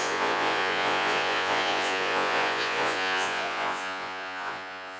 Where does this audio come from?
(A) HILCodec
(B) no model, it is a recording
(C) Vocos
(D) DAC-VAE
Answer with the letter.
C